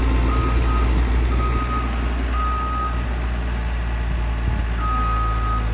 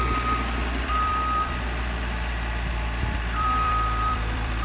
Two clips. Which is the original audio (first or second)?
first